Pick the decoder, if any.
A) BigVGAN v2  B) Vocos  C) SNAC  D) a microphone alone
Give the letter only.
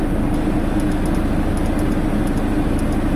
D